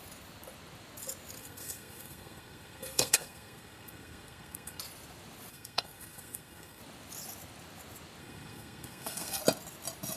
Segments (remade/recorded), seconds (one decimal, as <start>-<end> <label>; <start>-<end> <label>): 0.0-1.4 recorded; 1.4-4.8 remade; 4.8-5.5 recorded; 5.5-6.8 remade; 6.8-8.2 recorded; 8.2-9.4 remade; 9.4-10.2 recorded